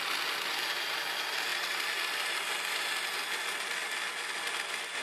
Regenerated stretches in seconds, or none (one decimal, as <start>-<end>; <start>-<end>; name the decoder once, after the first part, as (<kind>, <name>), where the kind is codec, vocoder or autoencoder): none